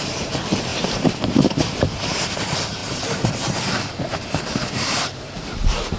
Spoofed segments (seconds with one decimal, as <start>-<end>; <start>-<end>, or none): 0.0-6.0